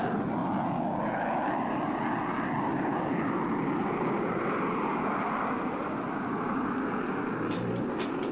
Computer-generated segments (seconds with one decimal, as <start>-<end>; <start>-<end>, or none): none